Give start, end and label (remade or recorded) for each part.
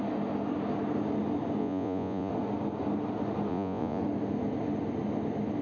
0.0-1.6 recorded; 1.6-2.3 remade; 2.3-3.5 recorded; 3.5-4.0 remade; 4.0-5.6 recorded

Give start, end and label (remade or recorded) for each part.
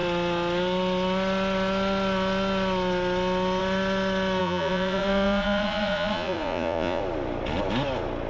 0.0-4.4 recorded; 4.4-7.0 remade; 7.0-8.3 recorded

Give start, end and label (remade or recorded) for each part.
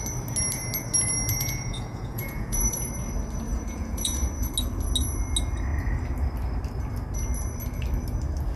0.0-1.3 recorded; 1.3-2.9 remade; 2.9-3.5 recorded; 3.5-4.5 remade; 4.5-8.6 recorded